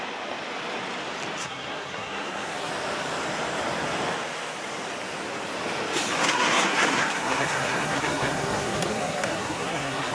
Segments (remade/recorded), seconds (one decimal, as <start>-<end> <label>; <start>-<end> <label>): 0.0-1.4 recorded; 1.4-2.7 remade; 2.7-6.2 recorded; 6.2-10.1 remade